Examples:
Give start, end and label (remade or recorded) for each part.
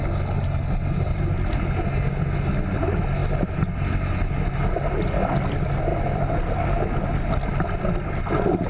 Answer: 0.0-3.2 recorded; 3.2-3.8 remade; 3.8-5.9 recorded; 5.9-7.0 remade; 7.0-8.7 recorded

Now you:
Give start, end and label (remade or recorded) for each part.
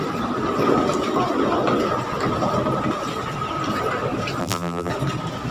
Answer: 0.0-4.4 recorded; 4.4-4.9 remade; 4.9-5.5 recorded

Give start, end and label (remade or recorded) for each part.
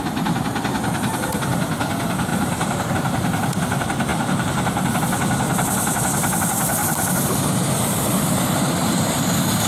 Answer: 0.0-2.3 recorded; 2.3-2.9 remade; 2.9-4.1 recorded; 4.1-5.0 remade; 5.0-6.8 recorded; 6.8-8.2 remade; 8.2-9.7 recorded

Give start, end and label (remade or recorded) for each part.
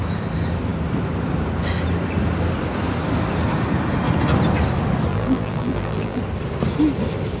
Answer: 0.0-5.1 recorded; 5.1-6.2 remade; 6.2-7.4 recorded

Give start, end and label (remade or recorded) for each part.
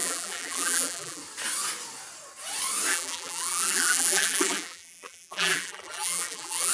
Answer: 0.0-1.2 remade; 1.2-2.9 recorded; 2.9-6.7 remade